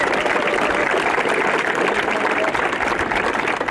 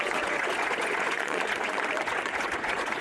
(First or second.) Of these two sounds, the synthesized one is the second